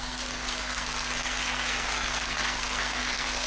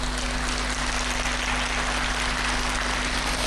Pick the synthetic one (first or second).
first